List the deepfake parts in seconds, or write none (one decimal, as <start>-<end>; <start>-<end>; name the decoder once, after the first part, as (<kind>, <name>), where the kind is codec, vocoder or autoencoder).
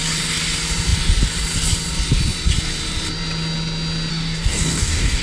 4.1-5.2 (codec, DAC)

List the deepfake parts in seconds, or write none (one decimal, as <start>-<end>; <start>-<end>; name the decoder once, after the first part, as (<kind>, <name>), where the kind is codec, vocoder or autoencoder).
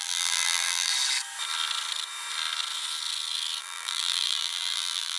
0.0-0.9 (vocoder, BigVGAN v2); 3.6-5.2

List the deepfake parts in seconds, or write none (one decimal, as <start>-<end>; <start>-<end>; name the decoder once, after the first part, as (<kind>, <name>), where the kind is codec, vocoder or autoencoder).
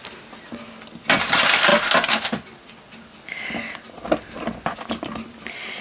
none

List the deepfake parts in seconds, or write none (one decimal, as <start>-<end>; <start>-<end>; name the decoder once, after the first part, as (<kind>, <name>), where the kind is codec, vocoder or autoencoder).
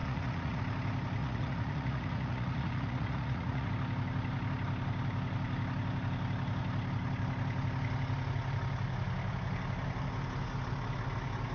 0.0-0.6 (vocoder, Vocos); 1.2-3.7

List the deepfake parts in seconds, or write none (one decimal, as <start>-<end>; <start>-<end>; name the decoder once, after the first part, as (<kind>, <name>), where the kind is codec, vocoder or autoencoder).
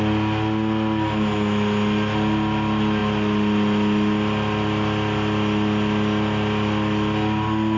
none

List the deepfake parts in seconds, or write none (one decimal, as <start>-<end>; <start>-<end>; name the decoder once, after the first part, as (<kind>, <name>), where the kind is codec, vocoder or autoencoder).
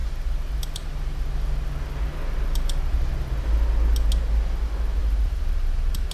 none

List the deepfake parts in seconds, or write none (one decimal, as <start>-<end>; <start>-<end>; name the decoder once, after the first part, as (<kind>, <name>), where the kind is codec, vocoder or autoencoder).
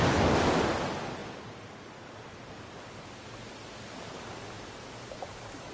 none